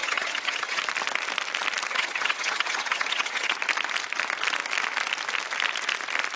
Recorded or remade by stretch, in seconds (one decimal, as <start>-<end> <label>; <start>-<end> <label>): 0.0-0.8 remade; 0.8-1.9 recorded; 1.9-3.5 remade; 3.5-6.4 recorded